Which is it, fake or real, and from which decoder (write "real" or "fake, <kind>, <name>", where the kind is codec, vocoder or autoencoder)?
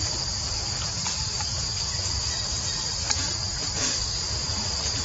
real